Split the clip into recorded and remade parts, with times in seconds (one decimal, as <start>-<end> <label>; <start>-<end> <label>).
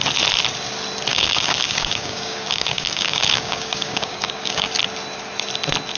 0.0-1.1 recorded; 1.1-4.7 remade; 4.7-6.0 recorded